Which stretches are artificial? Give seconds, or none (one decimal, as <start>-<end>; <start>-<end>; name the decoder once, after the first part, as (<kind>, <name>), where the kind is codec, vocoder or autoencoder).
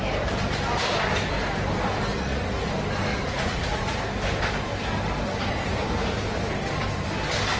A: 2.1-2.7 (vocoder, Vocos); 3.1-4.0